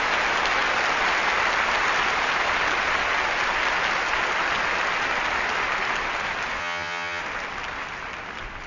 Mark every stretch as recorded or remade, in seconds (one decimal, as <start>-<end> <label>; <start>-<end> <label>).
0.0-6.6 recorded; 6.6-7.2 remade; 7.2-8.7 recorded